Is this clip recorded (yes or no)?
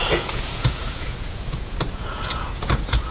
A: no